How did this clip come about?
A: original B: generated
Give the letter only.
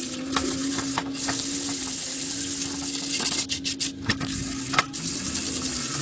A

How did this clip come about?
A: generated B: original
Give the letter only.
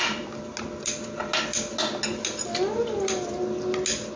B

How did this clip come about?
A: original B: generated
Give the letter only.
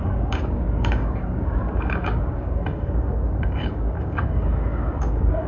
B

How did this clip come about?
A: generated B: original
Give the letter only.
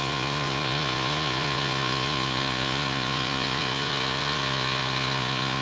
A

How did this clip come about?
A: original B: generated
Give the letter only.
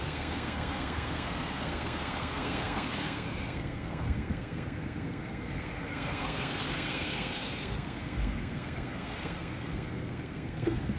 B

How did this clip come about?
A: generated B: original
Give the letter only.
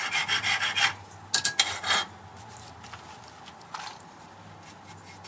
B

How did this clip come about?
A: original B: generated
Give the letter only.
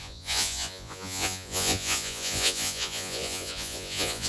B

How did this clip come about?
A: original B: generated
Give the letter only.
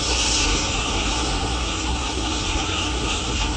B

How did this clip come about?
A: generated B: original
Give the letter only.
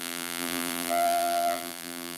A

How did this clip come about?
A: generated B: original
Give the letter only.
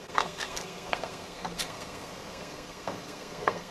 A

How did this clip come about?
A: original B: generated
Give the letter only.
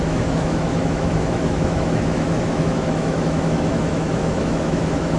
B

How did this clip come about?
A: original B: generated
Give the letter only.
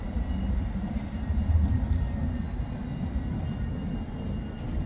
A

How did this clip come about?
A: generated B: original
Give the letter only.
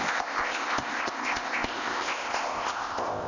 A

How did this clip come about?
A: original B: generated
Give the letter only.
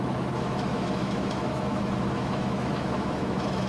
B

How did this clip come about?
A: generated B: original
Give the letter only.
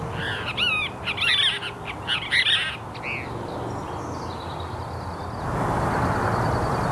B